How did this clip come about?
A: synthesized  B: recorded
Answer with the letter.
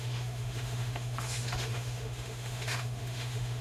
A